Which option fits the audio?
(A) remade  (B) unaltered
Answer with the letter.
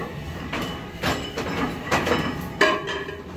A